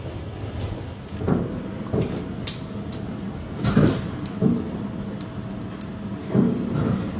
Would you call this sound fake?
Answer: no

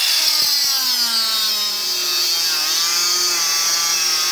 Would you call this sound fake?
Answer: no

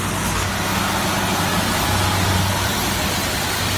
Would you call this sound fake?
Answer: no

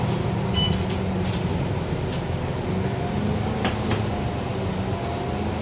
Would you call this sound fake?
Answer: no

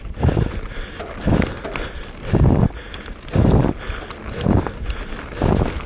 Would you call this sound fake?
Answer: no